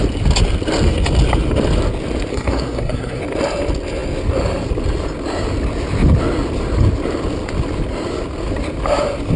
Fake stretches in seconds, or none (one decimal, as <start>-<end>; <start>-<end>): 2.3-3.2